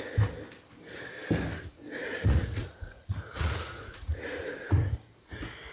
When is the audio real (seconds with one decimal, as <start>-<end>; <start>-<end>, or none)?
0.0-2.1; 4.9-5.7